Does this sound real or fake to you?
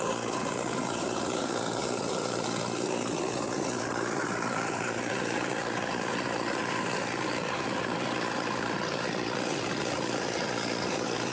fake